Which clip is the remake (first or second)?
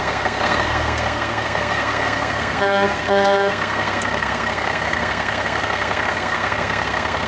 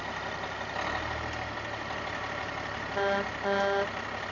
first